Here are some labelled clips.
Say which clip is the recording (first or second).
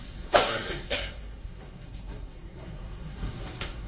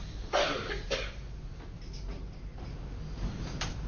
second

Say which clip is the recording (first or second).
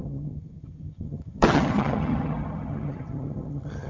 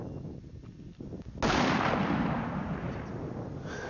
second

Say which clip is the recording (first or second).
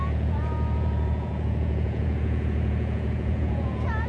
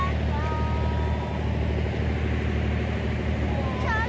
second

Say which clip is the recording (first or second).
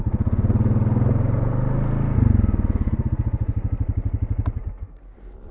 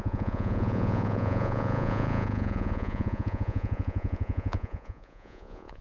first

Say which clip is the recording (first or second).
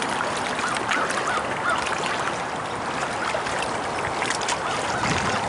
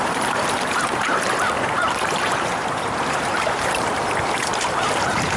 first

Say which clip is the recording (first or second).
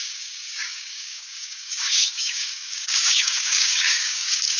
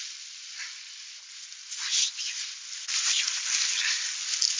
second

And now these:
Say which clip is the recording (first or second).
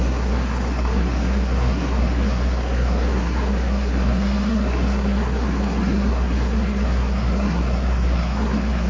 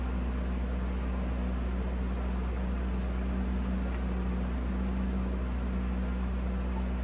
second